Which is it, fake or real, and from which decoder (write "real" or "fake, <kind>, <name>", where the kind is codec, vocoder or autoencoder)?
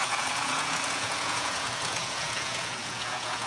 fake, vocoder, Vocos